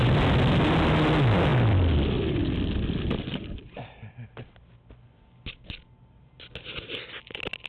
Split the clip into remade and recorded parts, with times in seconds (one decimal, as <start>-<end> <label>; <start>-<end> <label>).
0.0-7.7 recorded